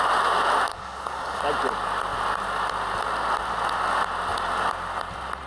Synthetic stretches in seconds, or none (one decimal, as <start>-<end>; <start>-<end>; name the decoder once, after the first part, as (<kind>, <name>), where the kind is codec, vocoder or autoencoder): 0.7-1.4 (codec, DAC)